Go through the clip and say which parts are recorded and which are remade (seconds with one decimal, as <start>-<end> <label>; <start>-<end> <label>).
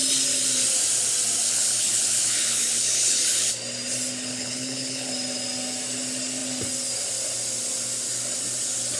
0.0-1.4 recorded; 1.4-3.5 remade; 3.5-4.3 recorded; 4.3-5.1 remade; 5.1-9.0 recorded